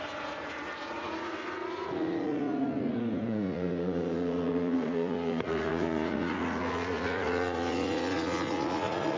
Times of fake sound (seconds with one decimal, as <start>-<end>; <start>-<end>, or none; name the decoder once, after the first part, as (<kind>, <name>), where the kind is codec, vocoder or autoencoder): 0.0-9.2 (vocoder, Vocos)